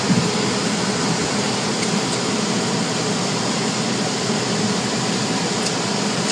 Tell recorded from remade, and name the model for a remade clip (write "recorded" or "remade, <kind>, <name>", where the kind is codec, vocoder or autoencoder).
recorded